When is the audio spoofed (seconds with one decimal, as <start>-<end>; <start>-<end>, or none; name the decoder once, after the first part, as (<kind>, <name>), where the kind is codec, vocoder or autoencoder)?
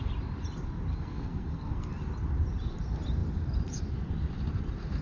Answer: 0.9-1.9 (codec, SNAC)